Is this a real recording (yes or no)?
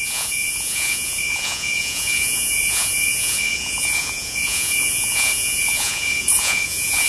no